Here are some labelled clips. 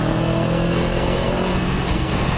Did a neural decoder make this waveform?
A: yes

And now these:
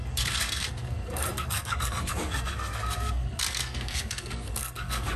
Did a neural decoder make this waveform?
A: yes